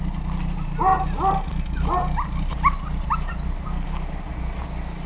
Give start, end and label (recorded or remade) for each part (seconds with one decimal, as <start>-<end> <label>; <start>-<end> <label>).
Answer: 0.0-5.1 recorded